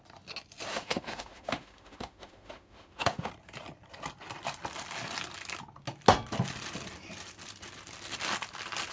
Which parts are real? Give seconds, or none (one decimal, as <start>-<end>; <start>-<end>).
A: 0.0-0.7; 3.3-8.9